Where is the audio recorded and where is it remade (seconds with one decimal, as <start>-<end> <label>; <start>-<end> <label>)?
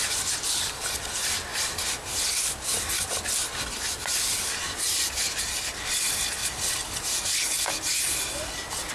0.0-8.9 recorded